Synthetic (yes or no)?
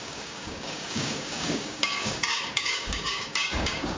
yes